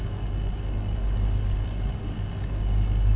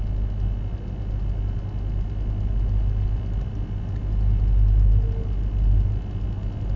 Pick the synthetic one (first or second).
first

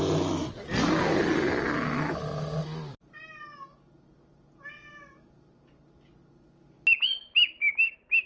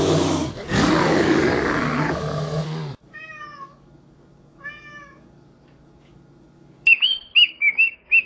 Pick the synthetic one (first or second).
second